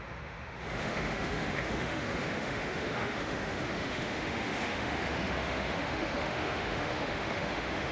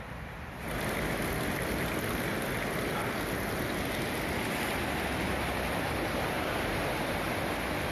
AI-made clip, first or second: first